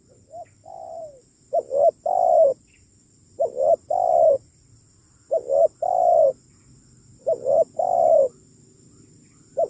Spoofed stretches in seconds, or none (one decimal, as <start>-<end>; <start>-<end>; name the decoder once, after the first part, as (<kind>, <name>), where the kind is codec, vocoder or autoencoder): none